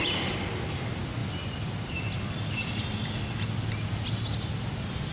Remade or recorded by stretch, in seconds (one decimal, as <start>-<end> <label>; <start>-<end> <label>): 0.0-5.1 recorded